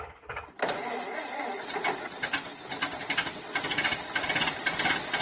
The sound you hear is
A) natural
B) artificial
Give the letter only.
A